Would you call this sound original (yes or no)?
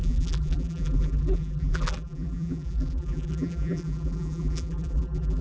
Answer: no